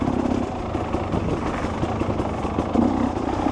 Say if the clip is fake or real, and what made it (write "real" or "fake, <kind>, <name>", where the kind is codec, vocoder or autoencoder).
real